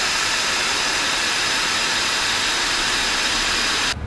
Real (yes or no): yes